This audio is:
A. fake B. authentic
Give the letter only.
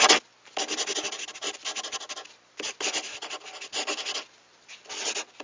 B